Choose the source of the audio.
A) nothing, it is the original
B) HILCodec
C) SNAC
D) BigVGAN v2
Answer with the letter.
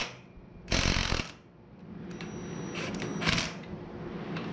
A